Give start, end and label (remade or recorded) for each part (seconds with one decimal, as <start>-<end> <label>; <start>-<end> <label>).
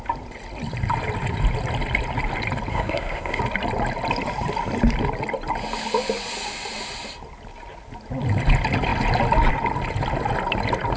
0.0-2.7 recorded; 2.7-3.4 remade; 3.4-11.0 recorded